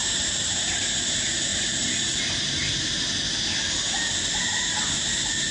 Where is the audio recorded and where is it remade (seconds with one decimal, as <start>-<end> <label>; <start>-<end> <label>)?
0.0-0.8 remade; 0.8-1.5 recorded; 1.5-3.1 remade; 3.1-5.5 recorded